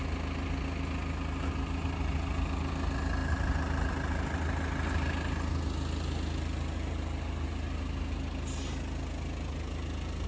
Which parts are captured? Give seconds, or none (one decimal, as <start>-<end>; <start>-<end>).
0.0-10.3